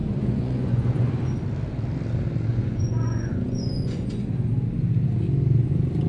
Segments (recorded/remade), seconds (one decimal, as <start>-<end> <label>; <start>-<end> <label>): 0.0-1.1 remade; 1.1-2.5 recorded; 2.5-4.3 remade; 4.3-6.1 recorded